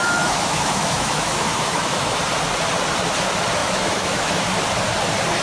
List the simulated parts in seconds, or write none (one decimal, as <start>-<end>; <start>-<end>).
0.0-2.2; 3.6-4.5